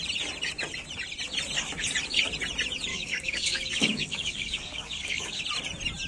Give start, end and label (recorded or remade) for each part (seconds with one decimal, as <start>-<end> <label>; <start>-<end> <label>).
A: 0.0-2.9 recorded; 2.9-5.4 remade; 5.4-6.1 recorded